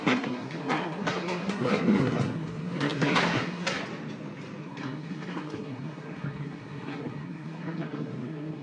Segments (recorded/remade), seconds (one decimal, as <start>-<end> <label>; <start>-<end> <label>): 0.0-3.8 remade; 3.8-4.6 recorded; 4.6-8.6 remade